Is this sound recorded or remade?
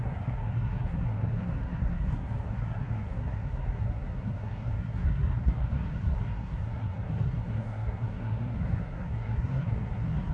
remade